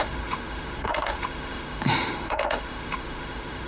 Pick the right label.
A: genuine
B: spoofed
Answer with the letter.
B